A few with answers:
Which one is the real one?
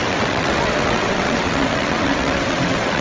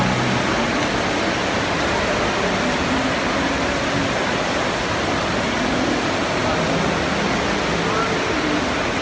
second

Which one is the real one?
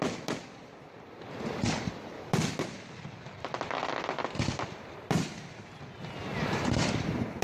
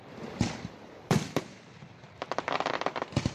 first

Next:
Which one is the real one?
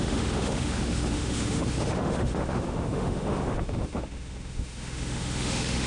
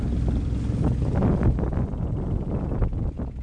second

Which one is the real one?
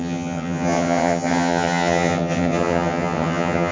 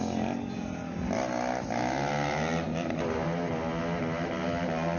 second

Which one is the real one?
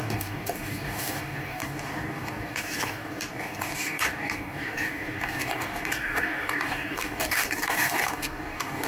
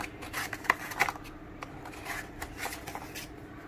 second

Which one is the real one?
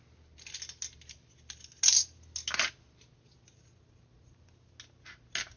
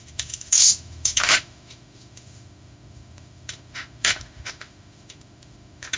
first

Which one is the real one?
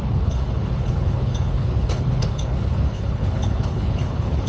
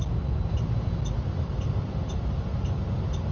second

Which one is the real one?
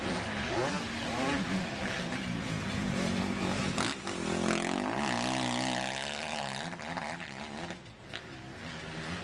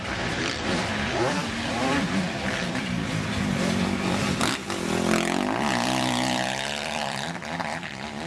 first